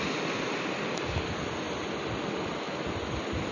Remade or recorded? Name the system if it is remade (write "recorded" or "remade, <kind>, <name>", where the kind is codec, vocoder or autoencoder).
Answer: recorded